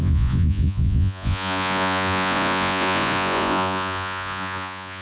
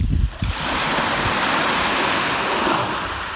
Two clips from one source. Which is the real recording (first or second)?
second